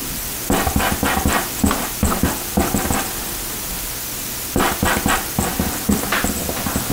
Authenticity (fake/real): real